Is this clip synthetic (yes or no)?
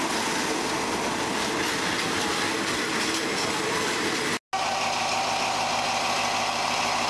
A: no